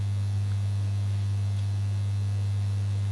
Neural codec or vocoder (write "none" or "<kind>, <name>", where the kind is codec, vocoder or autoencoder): none